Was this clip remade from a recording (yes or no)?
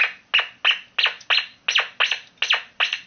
no